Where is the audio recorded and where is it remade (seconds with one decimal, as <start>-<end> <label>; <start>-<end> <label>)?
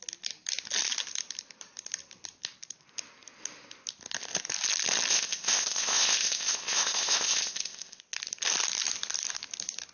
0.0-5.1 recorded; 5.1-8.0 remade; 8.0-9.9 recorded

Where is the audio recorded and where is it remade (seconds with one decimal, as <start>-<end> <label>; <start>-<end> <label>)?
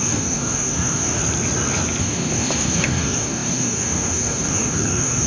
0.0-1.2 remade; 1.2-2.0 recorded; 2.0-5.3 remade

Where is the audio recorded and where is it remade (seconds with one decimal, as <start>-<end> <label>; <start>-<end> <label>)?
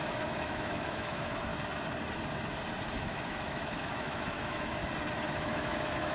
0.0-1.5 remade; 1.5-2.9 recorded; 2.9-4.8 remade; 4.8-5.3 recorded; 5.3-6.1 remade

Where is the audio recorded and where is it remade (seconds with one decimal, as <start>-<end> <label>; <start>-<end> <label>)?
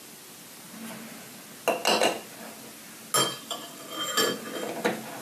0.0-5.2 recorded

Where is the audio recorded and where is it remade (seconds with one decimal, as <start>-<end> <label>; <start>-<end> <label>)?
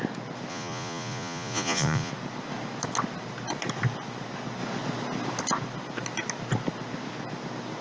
0.0-0.5 recorded; 0.5-2.1 remade; 2.1-7.8 recorded